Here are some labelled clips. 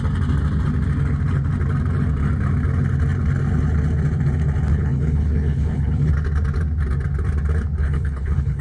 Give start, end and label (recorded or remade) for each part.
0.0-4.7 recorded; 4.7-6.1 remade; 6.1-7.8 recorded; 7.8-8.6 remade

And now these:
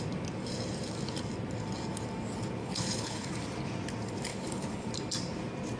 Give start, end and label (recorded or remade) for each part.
0.0-2.6 recorded; 2.6-3.3 remade; 3.3-4.3 recorded; 4.3-4.9 remade; 4.9-5.8 recorded

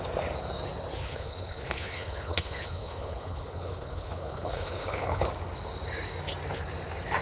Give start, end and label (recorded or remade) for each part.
0.0-1.0 recorded; 1.0-5.3 remade; 5.3-7.2 recorded

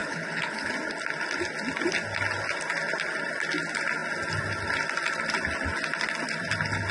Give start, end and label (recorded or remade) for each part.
0.0-0.7 remade; 0.7-6.9 recorded

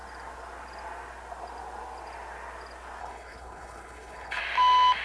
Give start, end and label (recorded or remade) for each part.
0.0-3.0 recorded; 3.0-4.4 remade; 4.4-5.0 recorded